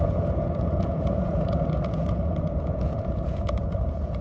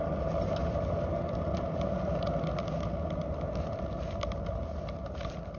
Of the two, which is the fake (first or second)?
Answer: first